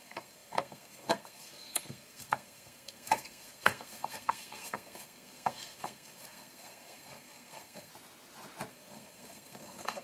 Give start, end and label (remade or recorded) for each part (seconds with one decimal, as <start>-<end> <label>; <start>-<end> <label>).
0.0-7.9 remade; 7.9-8.7 recorded; 8.7-10.0 remade